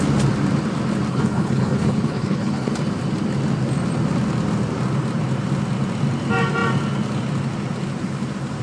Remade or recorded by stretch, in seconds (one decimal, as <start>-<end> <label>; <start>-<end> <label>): 0.0-1.1 recorded; 1.1-2.7 remade; 2.7-8.6 recorded